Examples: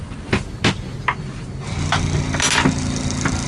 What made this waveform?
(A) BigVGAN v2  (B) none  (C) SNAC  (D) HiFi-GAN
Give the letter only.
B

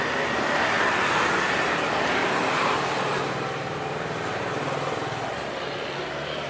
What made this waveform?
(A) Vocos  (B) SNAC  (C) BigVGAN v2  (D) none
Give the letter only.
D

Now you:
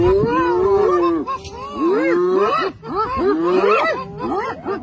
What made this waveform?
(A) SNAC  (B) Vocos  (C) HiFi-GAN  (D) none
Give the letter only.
D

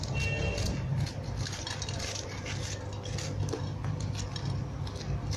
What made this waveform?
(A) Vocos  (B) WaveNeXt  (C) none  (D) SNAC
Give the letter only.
C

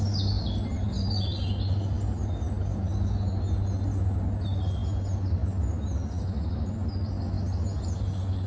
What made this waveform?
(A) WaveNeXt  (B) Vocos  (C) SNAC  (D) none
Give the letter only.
D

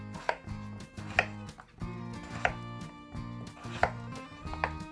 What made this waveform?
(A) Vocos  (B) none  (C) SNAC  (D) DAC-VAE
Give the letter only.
B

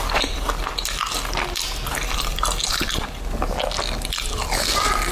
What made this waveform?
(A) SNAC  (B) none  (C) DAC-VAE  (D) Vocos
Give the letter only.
B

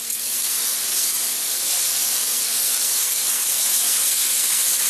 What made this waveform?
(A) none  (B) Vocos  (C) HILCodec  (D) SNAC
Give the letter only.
D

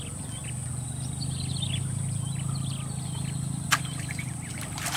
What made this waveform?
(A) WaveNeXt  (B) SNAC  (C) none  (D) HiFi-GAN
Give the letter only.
C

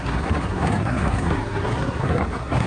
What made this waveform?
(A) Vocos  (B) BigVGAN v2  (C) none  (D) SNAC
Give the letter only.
D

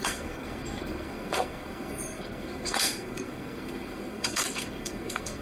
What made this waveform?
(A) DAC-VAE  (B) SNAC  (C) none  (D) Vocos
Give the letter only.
B